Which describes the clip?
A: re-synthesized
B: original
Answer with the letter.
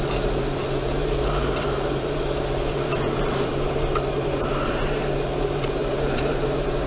A